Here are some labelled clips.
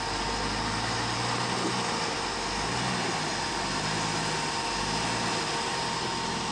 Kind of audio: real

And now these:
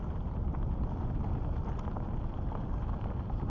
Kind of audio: real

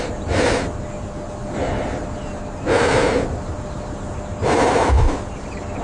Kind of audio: real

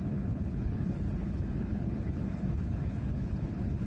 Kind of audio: fake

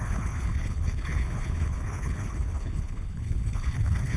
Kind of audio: fake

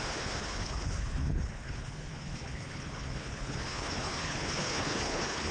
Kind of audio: fake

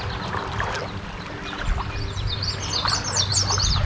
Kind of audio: real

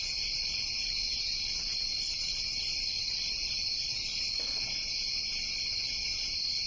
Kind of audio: real